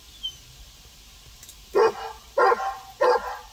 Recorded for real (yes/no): yes